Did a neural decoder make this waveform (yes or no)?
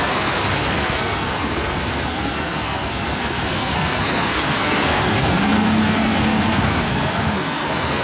yes